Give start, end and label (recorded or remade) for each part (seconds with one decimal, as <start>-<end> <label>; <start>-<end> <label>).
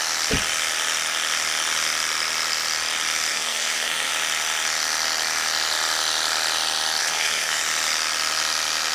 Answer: 0.0-3.3 recorded; 3.3-4.1 remade; 4.1-7.0 recorded; 7.0-7.6 remade; 7.6-8.9 recorded